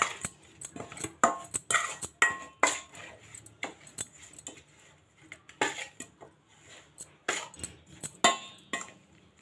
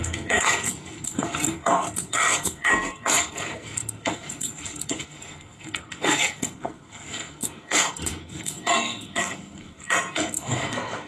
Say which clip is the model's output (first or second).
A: second